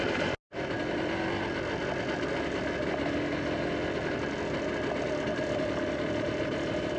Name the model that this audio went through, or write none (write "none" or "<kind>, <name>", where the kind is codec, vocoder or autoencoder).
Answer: none